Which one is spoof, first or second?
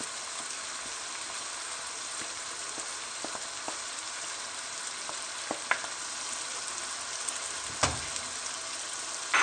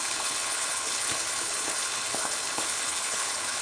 second